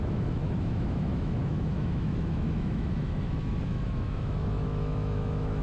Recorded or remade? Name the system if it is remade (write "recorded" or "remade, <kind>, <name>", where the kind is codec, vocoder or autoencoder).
remade, autoencoder, DAC-VAE